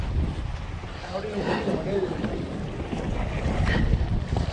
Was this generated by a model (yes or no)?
no